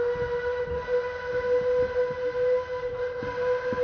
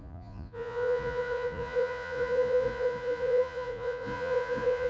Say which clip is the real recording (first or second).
first